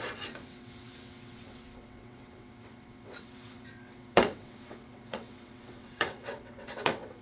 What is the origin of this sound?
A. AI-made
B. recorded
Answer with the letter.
A